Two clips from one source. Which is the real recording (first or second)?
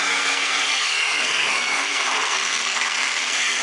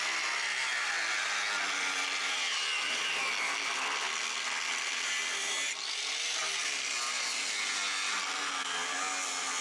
second